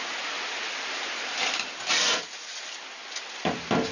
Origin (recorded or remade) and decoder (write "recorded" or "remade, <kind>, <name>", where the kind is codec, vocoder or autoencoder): recorded